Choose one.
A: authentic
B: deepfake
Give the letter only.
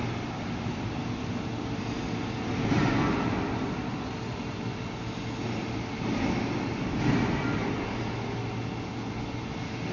A